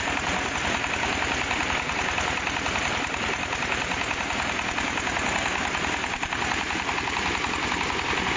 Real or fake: real